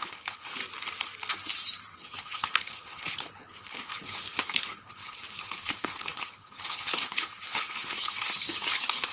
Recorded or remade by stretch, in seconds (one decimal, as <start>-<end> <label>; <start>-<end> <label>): 0.0-0.6 remade; 0.6-2.0 recorded; 2.0-9.1 remade